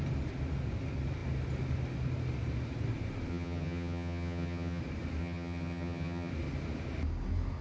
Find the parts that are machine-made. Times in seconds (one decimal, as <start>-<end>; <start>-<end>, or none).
3.3-4.8; 5.2-6.3